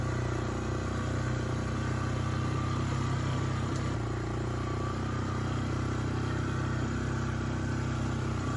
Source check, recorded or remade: recorded